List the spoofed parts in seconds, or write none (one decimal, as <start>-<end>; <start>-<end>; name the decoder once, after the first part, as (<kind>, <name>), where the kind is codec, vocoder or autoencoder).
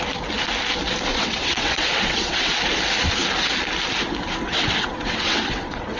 1.1-2.5 (vocoder, WaveNeXt); 4.5-6.0